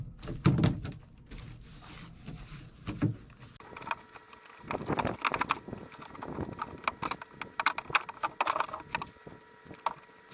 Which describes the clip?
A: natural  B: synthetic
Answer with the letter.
A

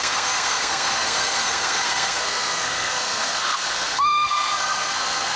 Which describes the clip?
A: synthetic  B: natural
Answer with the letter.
A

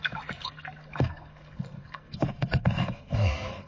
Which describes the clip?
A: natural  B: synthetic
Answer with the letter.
B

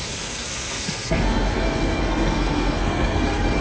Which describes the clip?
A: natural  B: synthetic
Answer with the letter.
B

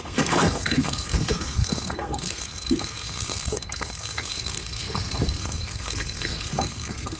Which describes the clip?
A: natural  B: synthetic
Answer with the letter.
B